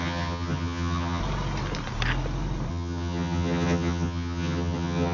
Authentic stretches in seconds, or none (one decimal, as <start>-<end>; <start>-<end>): 1.2-2.7